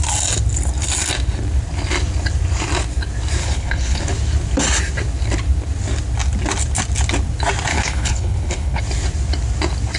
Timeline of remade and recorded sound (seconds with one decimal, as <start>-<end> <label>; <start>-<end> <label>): 0.0-3.4 recorded; 3.4-4.0 remade; 4.0-7.7 recorded; 7.7-8.8 remade; 8.8-10.0 recorded